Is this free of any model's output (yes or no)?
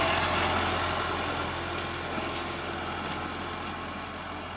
yes